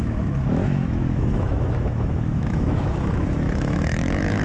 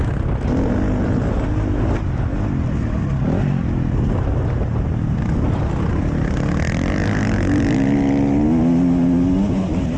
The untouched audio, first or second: second